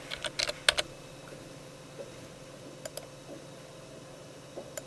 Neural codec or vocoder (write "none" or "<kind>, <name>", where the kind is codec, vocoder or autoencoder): none